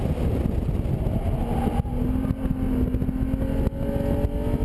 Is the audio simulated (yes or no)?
no